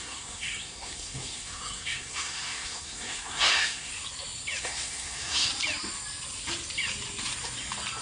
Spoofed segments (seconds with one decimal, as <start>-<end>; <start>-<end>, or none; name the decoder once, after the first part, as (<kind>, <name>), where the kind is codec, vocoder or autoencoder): 0.0-3.9 (codec, SNAC); 4.6-5.5